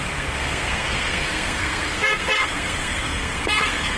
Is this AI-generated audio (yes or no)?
yes